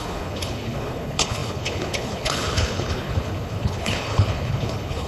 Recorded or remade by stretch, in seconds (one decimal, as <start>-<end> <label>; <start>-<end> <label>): 0.0-5.1 remade